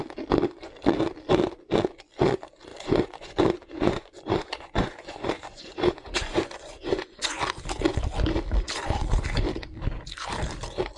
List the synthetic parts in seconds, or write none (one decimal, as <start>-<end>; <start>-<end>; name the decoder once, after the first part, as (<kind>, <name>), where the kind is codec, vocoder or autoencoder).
2.7-7.4 (vocoder, Vocos)